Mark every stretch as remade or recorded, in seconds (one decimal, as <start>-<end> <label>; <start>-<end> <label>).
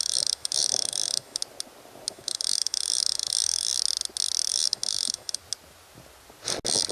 0.0-1.4 remade; 1.4-2.1 recorded; 2.1-3.7 remade; 3.7-4.5 recorded; 4.5-5.4 remade; 5.4-6.9 recorded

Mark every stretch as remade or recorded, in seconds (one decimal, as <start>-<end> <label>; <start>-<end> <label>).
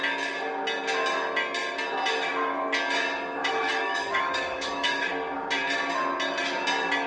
0.0-3.4 recorded; 3.4-5.1 remade; 5.1-7.1 recorded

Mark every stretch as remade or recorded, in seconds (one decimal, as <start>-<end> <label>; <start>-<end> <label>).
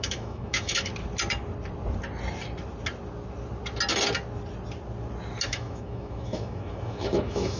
0.0-0.9 remade; 0.9-5.5 recorded; 5.5-7.6 remade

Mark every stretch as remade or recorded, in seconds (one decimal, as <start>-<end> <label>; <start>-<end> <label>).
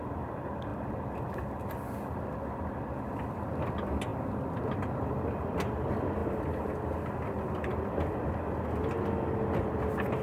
0.0-10.2 recorded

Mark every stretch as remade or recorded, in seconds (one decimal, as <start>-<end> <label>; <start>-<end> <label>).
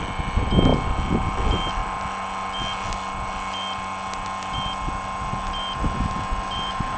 0.0-7.0 recorded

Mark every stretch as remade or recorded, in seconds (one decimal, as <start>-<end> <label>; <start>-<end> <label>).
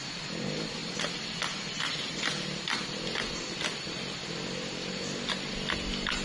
0.0-6.2 recorded